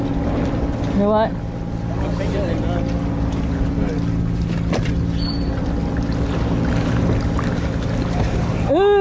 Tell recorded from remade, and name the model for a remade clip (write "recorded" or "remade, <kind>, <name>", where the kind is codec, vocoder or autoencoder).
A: recorded